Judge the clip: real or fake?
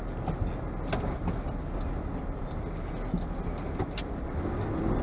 real